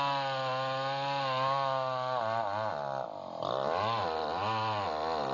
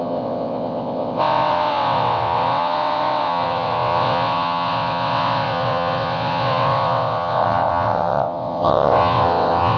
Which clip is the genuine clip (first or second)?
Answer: first